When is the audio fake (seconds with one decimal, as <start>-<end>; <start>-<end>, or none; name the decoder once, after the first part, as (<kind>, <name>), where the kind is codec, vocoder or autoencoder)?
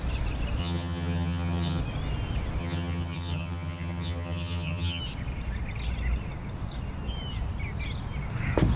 0.6-1.8 (vocoder, HiFi-GAN); 2.6-5.0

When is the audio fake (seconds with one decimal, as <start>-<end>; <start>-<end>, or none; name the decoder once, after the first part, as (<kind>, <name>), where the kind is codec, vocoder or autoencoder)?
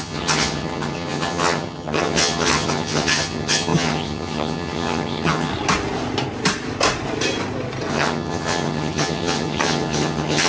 0.0-5.5 (vocoder, HiFi-GAN); 7.9-10.5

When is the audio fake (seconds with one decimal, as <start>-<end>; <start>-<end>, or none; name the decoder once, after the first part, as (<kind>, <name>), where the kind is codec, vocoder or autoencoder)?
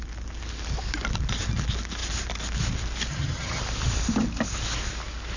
3.1-3.6 (vocoder, HiFi-GAN)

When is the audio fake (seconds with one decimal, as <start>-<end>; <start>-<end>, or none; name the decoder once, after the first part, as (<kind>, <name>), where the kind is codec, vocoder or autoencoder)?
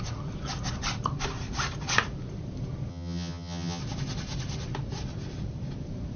2.9-3.8 (vocoder, HiFi-GAN)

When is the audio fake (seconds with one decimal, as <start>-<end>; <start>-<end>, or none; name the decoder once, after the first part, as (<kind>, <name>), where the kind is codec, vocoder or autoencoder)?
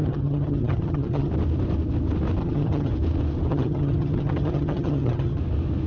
0.0-1.3 (vocoder, HiFi-GAN); 2.4-2.9; 3.5-5.4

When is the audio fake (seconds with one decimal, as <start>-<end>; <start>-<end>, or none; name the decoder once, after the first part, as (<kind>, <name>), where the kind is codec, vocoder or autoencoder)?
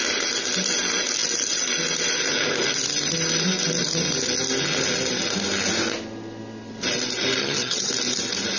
7.4-7.9 (vocoder, HiFi-GAN)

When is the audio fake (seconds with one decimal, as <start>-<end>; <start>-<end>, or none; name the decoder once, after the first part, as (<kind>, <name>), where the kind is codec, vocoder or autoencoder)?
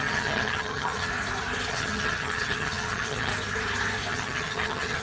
0.0-1.1 (vocoder, HiFi-GAN); 1.7-3.3; 4.1-5.0